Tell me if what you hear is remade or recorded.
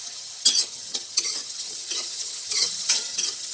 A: remade